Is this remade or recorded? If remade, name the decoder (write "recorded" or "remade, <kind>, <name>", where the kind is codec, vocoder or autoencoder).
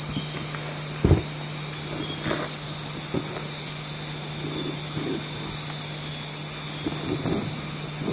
recorded